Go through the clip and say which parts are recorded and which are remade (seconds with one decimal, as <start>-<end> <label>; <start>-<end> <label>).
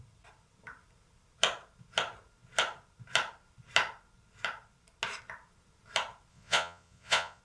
0.0-6.3 recorded; 6.3-7.4 remade